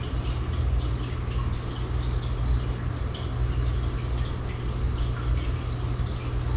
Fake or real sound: real